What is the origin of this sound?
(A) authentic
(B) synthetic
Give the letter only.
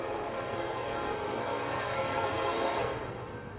B